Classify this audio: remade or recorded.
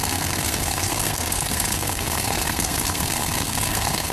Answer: remade